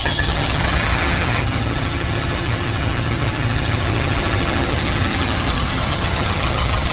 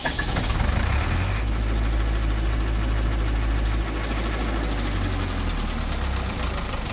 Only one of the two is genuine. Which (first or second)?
second